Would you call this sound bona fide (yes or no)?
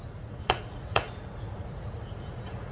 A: no